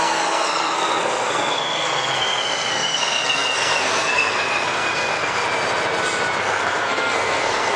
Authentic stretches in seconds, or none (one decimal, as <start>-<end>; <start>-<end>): 5.4-6.4